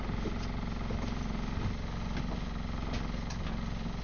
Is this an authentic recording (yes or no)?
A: yes